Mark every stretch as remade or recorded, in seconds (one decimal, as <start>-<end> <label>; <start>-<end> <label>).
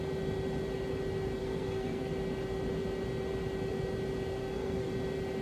0.0-1.4 recorded; 1.4-2.1 remade; 2.1-4.4 recorded; 4.4-4.9 remade; 4.9-5.4 recorded